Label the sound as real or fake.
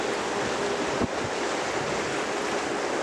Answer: real